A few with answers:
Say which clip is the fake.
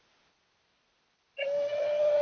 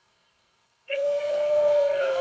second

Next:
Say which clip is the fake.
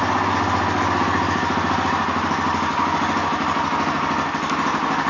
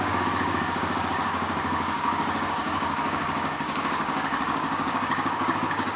second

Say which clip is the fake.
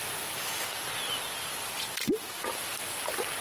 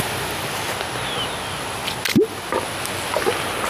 first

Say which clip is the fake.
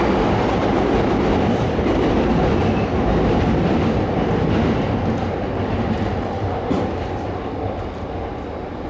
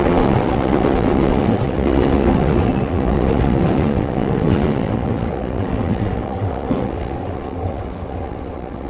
second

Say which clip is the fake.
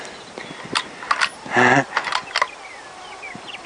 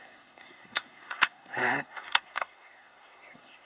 second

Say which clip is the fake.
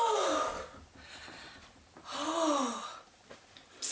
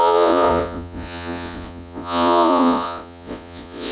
second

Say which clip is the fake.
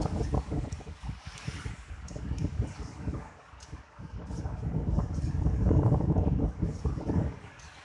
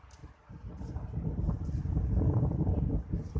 first